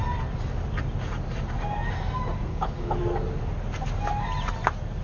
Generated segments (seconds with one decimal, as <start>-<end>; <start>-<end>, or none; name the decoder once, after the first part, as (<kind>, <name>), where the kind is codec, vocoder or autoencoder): 2.5-3.0 (codec, HILCodec)